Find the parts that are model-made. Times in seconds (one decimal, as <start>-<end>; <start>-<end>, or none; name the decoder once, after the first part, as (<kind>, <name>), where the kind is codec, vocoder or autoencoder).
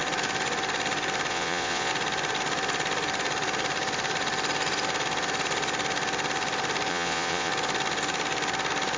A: 1.3-1.9 (vocoder, Vocos); 6.9-7.5